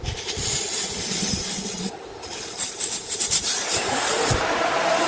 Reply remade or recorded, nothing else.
remade